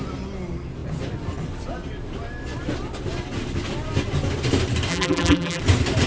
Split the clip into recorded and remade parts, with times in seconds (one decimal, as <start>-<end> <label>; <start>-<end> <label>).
0.0-4.9 recorded; 4.9-5.6 remade; 5.6-6.1 recorded